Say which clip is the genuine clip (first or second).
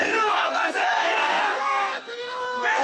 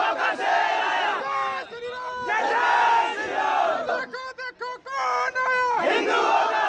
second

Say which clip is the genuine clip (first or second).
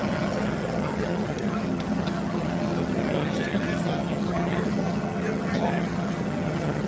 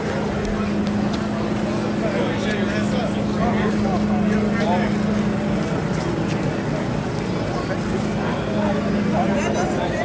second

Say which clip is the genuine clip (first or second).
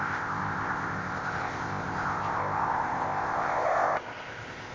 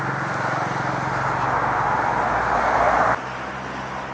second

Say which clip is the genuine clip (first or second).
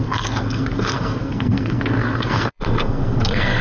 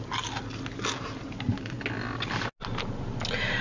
second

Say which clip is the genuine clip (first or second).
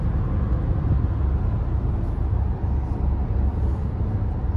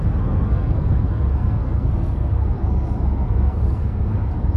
first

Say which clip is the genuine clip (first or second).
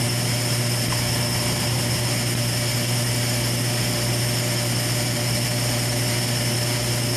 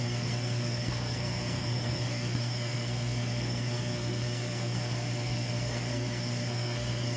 first